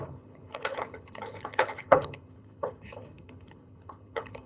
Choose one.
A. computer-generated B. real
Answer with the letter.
A